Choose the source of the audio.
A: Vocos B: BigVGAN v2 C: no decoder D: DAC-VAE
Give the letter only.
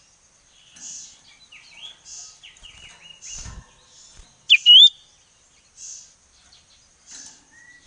C